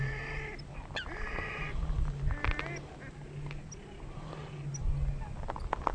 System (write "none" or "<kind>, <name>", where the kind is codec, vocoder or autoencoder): none